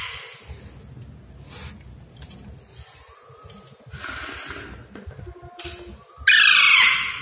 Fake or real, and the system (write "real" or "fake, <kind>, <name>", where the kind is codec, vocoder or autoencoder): real